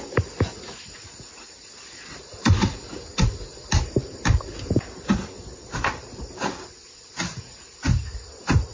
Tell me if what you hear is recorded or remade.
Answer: recorded